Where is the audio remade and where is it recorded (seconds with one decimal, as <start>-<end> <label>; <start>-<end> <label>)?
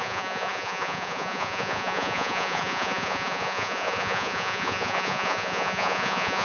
0.0-6.4 remade